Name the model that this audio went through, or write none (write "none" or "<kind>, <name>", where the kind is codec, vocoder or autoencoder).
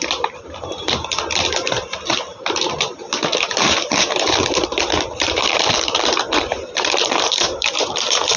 vocoder, BigVGAN v2